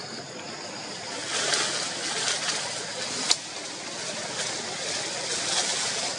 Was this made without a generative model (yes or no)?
yes